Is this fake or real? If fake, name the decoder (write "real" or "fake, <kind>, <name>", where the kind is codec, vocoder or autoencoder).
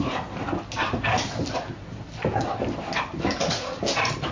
real